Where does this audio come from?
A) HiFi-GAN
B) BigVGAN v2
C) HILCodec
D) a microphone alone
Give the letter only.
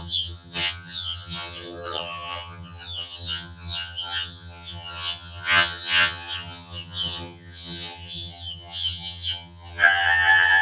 A